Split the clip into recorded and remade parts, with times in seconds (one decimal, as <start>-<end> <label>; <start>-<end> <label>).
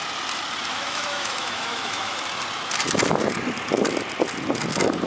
0.0-0.7 recorded; 0.7-2.2 remade; 2.2-5.1 recorded